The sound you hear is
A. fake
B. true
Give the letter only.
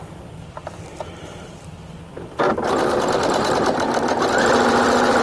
A